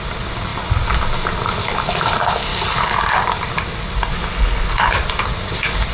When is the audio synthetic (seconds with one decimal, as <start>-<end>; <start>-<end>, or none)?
4.1-4.9